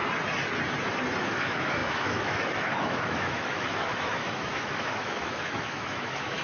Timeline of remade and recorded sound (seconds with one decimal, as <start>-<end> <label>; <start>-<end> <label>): 0.0-1.2 recorded; 1.2-6.4 remade